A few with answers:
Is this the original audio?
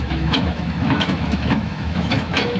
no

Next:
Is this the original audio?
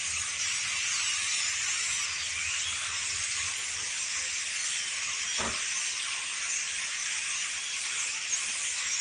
yes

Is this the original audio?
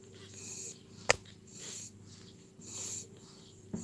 yes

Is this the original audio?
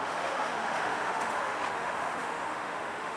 no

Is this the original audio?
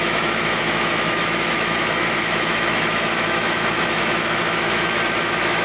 no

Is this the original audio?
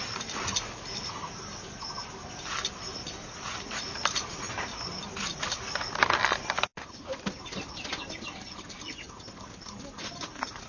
yes